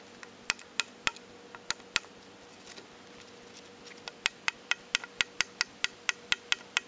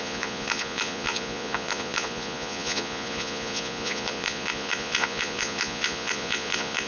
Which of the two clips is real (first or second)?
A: first